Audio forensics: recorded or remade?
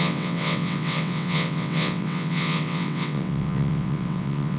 remade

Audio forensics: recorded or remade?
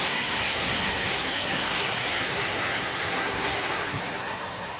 remade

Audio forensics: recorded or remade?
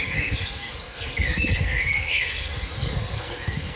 remade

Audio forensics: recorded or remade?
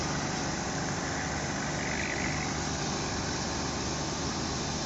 recorded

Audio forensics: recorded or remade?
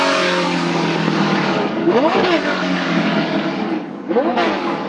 remade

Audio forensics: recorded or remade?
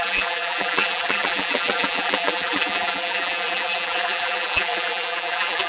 remade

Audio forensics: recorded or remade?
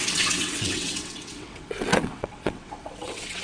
remade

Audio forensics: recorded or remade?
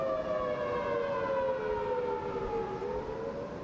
recorded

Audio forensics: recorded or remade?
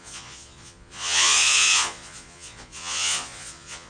remade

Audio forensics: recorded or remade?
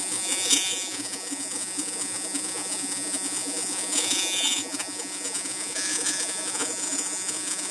remade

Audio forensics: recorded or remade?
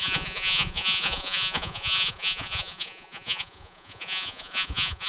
remade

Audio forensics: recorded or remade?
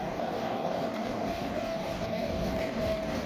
remade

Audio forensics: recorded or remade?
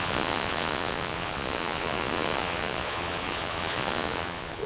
remade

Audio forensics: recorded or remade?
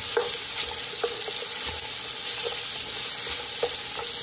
recorded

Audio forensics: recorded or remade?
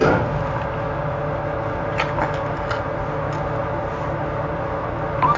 recorded